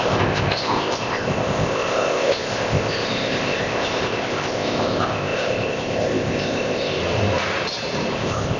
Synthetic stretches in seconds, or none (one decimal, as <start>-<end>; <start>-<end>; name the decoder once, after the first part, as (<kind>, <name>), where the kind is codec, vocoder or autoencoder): 0.0-7.0 (codec, ZipCodec); 8.1-8.6